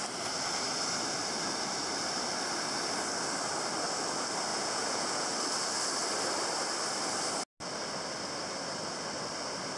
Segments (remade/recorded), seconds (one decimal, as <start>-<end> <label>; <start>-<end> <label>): 0.0-4.5 recorded; 4.5-5.3 remade; 5.3-9.8 recorded